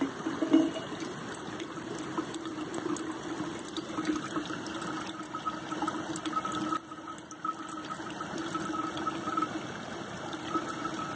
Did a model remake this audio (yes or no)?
no